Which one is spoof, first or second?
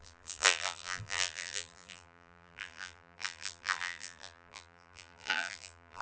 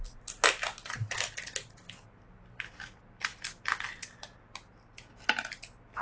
first